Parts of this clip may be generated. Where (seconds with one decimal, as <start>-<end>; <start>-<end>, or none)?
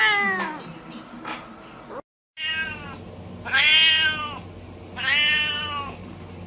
none